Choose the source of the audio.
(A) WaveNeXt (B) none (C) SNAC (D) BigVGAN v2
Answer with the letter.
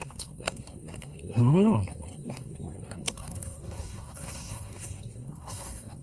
C